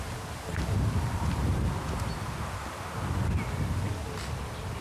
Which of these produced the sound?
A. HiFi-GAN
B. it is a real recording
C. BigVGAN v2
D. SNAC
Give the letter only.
B